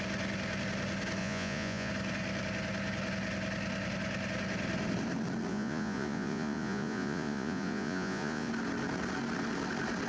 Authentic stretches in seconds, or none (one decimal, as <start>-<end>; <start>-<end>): 0.0-1.2; 1.9-5.5; 8.5-10.1